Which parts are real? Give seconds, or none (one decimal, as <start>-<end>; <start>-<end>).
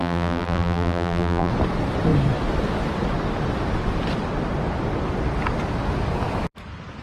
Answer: 1.5-7.0